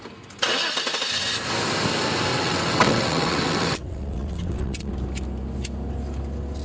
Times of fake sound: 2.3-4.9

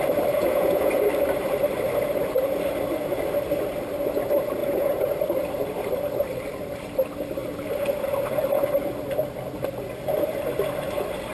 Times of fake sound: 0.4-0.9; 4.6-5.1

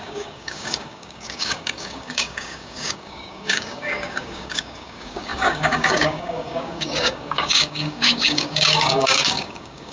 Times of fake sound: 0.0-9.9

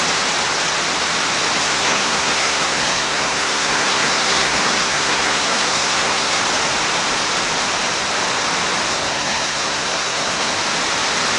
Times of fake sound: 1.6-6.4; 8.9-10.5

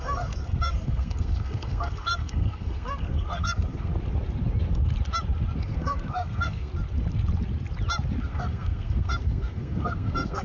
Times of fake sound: 0.0-3.9; 5.6-6.7; 8.2-10.4